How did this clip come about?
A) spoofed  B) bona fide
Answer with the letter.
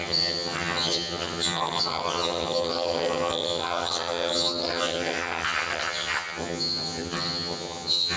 A